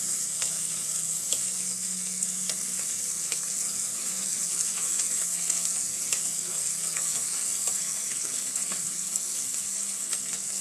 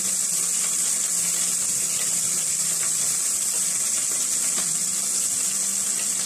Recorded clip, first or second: second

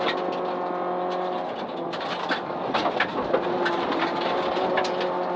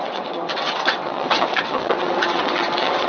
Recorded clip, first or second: first